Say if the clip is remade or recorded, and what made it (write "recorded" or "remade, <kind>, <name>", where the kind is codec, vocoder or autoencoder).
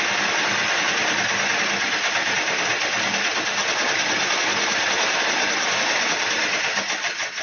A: recorded